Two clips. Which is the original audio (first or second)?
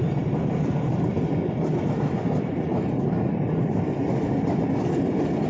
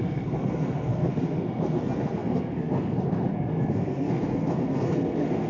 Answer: first